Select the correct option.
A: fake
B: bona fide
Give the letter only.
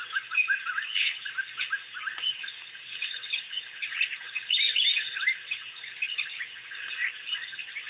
B